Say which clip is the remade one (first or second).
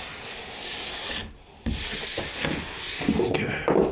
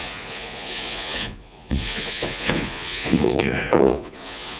second